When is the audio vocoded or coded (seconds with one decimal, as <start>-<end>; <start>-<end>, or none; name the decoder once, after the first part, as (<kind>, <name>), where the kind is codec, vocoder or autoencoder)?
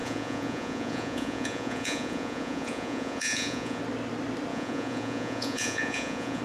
0.0-3.8 (vocoder, Vocos); 4.5-6.4